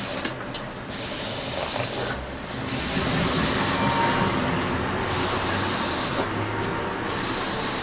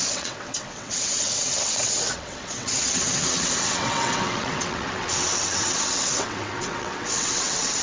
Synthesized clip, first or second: second